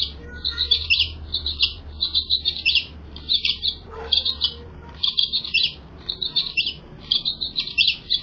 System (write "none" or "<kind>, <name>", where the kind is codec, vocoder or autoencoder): vocoder, BigVGAN v2